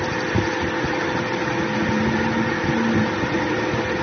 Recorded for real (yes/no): yes